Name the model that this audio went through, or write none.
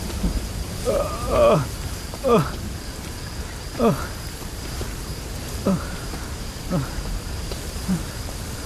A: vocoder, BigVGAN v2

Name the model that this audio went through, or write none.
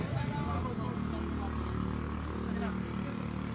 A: none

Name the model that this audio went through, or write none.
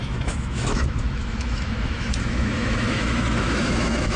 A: autoencoder, DAC-VAE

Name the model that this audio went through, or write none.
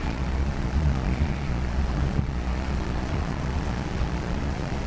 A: vocoder, Vocos